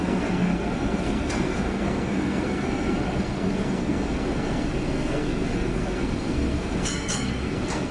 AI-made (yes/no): yes